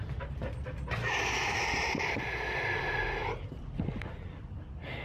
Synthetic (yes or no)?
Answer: no